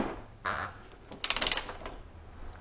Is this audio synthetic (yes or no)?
no